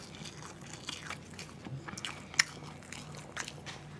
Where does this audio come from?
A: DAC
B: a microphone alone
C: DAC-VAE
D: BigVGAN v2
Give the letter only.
B